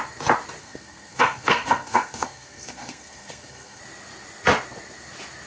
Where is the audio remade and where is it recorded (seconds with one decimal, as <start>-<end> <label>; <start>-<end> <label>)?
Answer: 0.0-0.6 recorded; 0.6-3.8 remade; 3.8-5.5 recorded

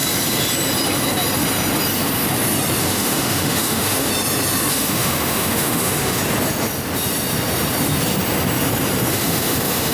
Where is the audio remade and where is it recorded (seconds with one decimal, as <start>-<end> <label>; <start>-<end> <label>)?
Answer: 0.0-2.8 recorded; 2.8-4.1 remade; 4.1-4.7 recorded; 4.7-6.2 remade; 6.2-9.1 recorded; 9.1-9.9 remade

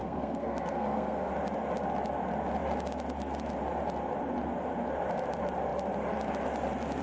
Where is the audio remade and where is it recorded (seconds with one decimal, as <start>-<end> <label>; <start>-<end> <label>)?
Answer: 0.0-1.3 remade; 1.3-7.0 recorded

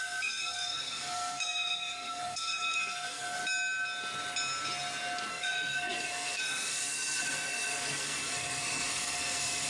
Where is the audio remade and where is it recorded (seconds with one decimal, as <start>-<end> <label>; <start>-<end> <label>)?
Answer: 0.0-3.4 remade; 3.4-5.3 recorded; 5.3-9.7 remade

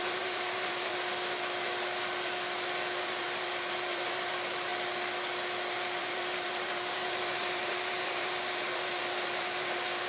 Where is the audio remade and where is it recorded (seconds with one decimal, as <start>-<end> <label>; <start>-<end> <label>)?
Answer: 0.0-0.9 remade; 0.9-3.0 recorded; 3.0-4.7 remade; 4.7-6.0 recorded; 6.0-10.1 remade

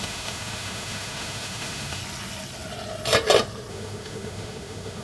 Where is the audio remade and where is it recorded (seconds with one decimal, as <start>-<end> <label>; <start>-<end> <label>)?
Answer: 0.0-2.0 remade; 2.0-3.7 recorded; 3.7-5.0 remade

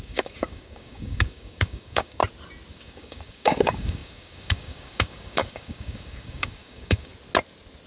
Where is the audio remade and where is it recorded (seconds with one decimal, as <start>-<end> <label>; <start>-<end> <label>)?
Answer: 0.0-2.2 remade; 2.2-2.7 recorded; 2.7-7.1 remade; 7.1-7.9 recorded

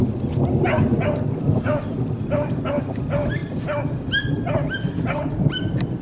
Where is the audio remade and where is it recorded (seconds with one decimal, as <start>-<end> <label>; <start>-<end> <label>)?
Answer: 0.0-6.0 recorded